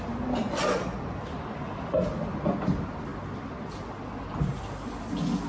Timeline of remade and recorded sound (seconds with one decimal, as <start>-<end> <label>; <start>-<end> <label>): 0.0-5.5 recorded